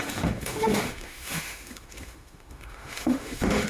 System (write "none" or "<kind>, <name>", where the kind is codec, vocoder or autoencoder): autoencoder, DAC-VAE